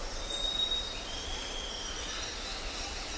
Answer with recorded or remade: recorded